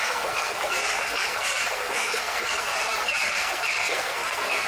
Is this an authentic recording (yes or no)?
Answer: no